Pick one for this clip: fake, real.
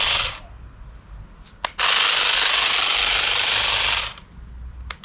real